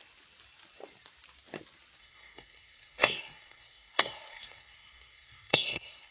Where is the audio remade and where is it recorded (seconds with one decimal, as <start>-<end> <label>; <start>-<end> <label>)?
0.0-2.0 recorded; 2.0-6.1 remade